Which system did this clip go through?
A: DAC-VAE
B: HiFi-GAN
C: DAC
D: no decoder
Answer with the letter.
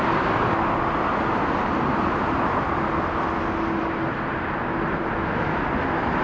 D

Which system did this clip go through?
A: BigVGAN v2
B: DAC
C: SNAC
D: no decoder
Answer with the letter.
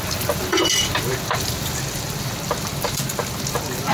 D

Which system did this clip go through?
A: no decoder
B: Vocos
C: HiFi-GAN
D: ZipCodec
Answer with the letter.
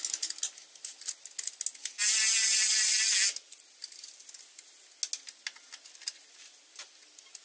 A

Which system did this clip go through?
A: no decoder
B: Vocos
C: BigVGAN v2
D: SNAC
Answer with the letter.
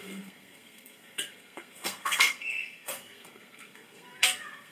D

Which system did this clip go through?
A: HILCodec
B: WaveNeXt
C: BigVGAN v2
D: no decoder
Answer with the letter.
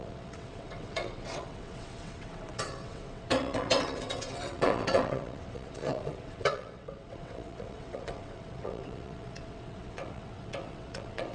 B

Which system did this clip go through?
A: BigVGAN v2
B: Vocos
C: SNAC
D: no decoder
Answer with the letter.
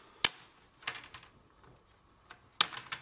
D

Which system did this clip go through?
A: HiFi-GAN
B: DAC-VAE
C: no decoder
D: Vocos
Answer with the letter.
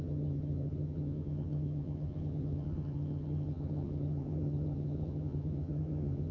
A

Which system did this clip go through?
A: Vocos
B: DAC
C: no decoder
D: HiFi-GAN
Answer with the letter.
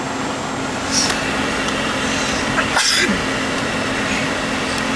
C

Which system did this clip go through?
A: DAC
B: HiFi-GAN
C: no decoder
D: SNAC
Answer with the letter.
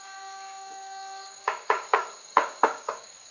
A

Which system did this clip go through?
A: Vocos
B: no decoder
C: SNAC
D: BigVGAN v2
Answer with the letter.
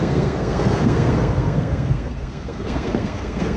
C